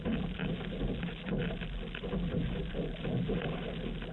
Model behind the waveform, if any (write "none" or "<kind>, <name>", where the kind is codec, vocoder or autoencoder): none